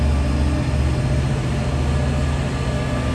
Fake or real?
real